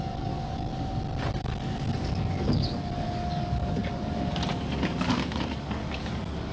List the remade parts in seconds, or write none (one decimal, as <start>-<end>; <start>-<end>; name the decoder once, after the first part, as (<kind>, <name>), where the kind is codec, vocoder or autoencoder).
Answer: 0.0-0.7 (codec, DAC); 1.4-6.5